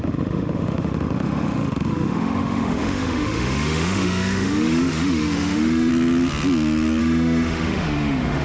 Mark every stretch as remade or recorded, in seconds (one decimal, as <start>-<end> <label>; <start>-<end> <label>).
0.0-5.9 remade; 5.9-7.0 recorded; 7.0-8.4 remade